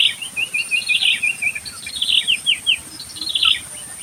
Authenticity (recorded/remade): recorded